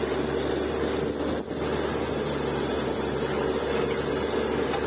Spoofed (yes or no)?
no